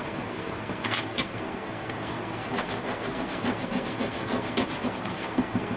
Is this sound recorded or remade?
remade